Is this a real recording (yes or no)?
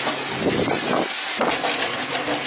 yes